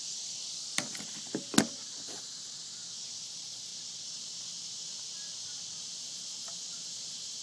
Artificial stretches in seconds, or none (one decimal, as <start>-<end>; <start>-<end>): 2.2-2.6; 3.2-3.7; 6.0-7.4